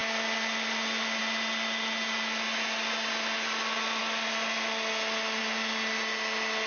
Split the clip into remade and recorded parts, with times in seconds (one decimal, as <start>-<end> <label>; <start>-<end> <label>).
0.0-6.7 recorded